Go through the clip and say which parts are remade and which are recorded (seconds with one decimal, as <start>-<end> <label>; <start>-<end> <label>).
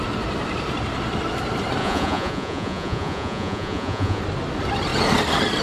0.0-1.8 recorded; 1.8-4.2 remade; 4.2-5.6 recorded